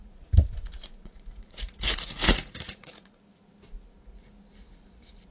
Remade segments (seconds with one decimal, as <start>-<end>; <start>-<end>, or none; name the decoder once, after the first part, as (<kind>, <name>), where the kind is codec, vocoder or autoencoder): 0.0-3.2 (vocoder, Vocos)